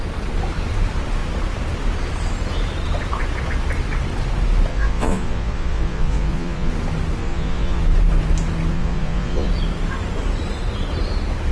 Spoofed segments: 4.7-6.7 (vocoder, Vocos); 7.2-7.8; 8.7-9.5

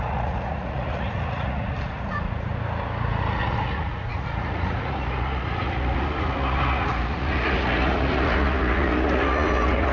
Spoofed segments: 0.0-2.5 (vocoder, Vocos); 3.2-9.9

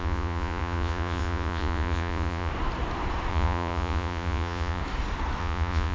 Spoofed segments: 0.0-2.5 (vocoder, Vocos); 3.3-4.8; 5.4-5.9

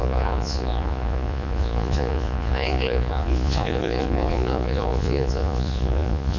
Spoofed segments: 0.0-6.4 (vocoder, Vocos)

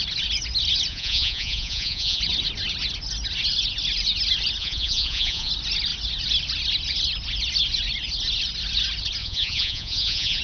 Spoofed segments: 0.9-2.2 (vocoder, Vocos); 4.6-5.5; 9.2-10.4